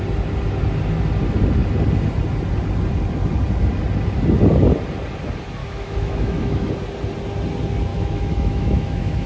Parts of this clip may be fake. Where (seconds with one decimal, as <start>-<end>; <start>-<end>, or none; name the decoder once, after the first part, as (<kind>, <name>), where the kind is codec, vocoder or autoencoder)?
5.6-6.7 (autoencoder, DAC-VAE); 7.9-9.3